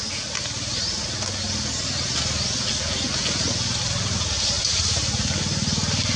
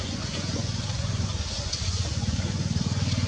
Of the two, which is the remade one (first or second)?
second